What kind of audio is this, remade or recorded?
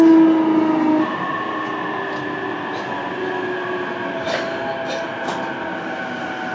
recorded